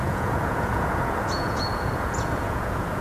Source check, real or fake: fake